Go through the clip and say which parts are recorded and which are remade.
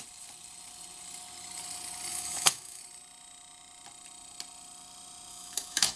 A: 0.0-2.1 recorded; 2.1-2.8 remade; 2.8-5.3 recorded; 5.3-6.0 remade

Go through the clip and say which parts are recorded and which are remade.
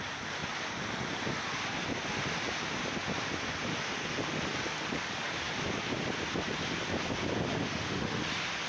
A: 0.0-7.6 recorded; 7.6-8.2 remade; 8.2-8.7 recorded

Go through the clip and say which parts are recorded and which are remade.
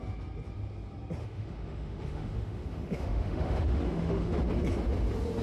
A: 0.0-1.2 recorded; 1.2-4.4 remade; 4.4-5.4 recorded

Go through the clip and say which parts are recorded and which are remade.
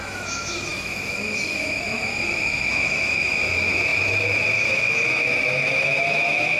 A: 0.0-6.6 remade